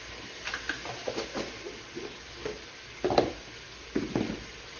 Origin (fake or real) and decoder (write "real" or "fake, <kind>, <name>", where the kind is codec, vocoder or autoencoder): real